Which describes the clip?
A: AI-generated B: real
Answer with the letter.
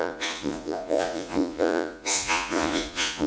A